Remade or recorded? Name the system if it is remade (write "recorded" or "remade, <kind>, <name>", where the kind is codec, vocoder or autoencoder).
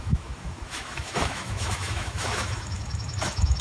remade, autoencoder, DAC-VAE